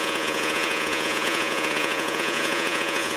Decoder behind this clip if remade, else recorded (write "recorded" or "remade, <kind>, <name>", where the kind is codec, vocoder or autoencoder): remade, vocoder, Vocos